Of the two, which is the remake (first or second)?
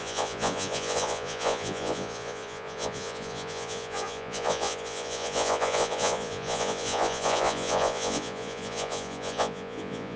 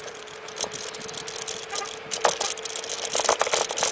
first